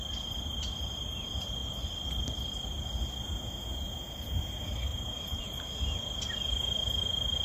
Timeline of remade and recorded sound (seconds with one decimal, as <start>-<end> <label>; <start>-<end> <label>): 0.0-4.9 recorded; 4.9-5.4 remade; 5.4-7.4 recorded